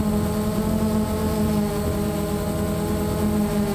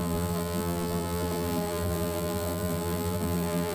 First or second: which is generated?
second